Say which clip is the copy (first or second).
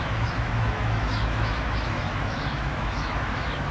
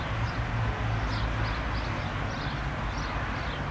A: first